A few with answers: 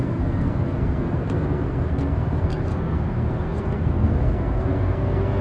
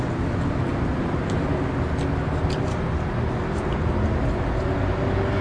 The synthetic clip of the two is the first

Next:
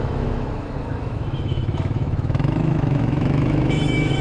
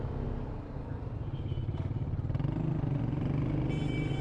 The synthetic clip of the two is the first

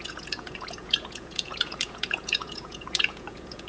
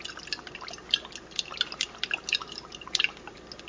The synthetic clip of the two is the first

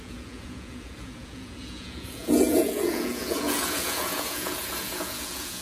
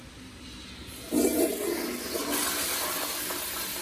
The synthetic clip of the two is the first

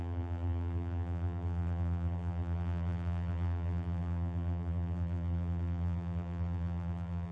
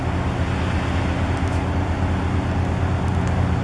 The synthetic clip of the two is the first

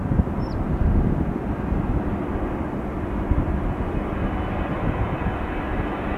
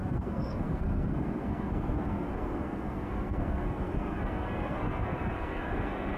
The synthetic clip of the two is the second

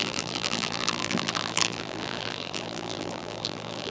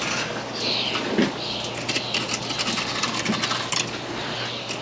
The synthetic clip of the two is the first